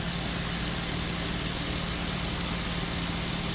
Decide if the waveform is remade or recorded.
recorded